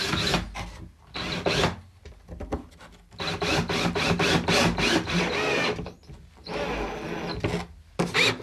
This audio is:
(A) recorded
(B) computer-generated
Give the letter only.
A